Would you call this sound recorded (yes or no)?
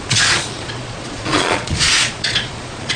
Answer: no